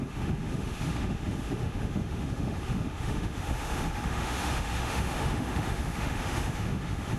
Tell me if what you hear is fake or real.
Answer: fake